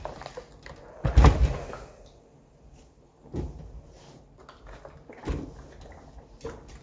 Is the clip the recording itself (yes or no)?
yes